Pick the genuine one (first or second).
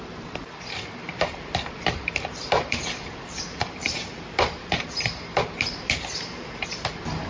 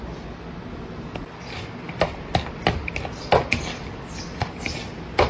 second